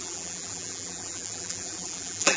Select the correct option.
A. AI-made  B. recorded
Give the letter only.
A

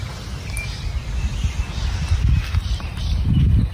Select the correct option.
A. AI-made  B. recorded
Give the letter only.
B